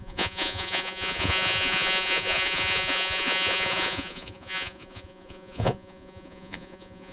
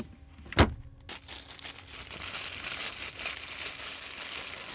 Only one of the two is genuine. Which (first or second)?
second